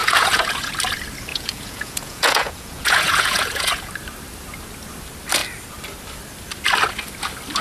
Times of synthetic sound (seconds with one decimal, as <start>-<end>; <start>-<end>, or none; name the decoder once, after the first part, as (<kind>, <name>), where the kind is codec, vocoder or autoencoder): 0.0-0.7 (vocoder, Vocos); 1.3-3.9